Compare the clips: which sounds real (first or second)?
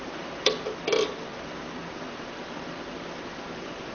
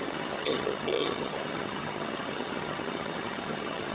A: first